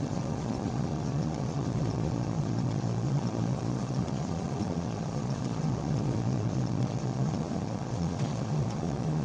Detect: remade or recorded remade